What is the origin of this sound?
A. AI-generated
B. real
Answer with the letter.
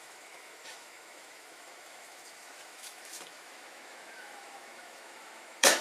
A